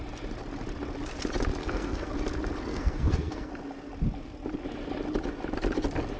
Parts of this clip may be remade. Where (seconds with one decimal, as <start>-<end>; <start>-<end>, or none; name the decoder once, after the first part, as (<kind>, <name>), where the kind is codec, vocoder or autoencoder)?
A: 1.6-2.1 (codec, SNAC); 2.7-3.5